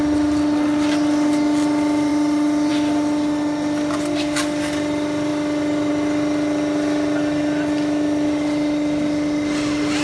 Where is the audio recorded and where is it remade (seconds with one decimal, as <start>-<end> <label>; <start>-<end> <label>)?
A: 0.0-10.0 recorded